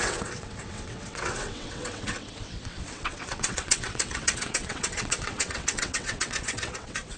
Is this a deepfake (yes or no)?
yes